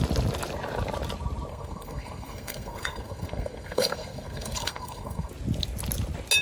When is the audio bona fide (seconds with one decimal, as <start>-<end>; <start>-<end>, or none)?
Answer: 0.0-1.5; 5.3-6.4